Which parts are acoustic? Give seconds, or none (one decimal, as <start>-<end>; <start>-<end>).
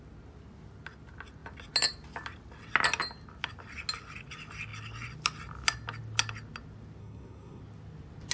0.0-7.0; 7.6-8.3